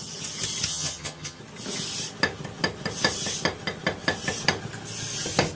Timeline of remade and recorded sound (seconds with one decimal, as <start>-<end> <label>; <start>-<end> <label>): 0.0-0.7 recorded; 0.7-1.4 remade; 1.4-5.5 recorded